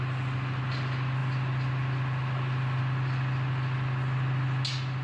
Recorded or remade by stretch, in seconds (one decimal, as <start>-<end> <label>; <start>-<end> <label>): 0.0-5.0 recorded